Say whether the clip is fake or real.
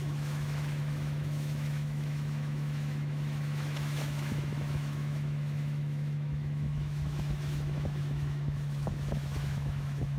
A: fake